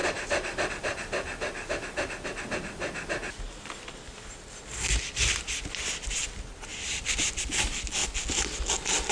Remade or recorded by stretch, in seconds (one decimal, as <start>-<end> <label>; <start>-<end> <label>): 0.0-9.1 recorded